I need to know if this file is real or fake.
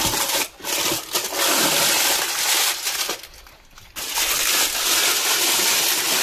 real